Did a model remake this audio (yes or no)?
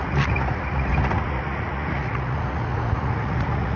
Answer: yes